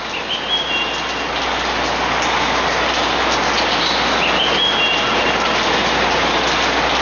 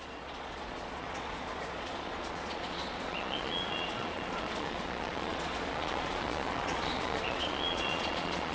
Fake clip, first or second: second